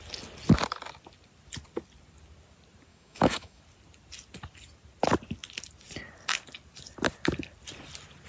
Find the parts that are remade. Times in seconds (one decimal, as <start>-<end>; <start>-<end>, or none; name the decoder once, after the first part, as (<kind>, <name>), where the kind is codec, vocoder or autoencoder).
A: 2.9-3.6 (autoencoder, DAC-VAE)